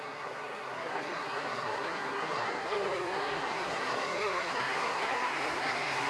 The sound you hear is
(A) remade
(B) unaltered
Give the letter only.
A